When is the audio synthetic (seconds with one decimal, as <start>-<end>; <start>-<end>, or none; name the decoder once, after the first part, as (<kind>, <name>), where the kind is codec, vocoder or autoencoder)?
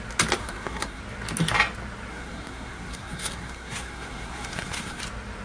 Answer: 0.4-1.0 (codec, SNAC); 2.1-5.0